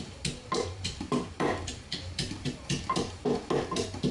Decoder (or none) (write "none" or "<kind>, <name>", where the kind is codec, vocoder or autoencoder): none